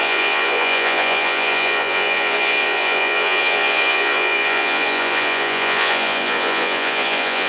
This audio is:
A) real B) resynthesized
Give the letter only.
B